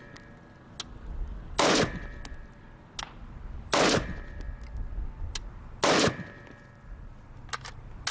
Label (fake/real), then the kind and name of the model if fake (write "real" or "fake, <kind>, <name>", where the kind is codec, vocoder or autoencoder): real